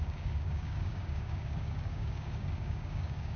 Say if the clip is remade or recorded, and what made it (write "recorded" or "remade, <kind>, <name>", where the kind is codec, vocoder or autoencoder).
remade, codec, DAC